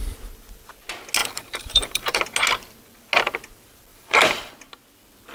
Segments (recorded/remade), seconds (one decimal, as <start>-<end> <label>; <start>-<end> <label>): 0.0-1.2 recorded; 1.2-2.2 remade; 2.2-3.9 recorded; 3.9-4.5 remade; 4.5-5.3 recorded